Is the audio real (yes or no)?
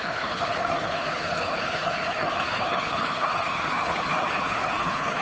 no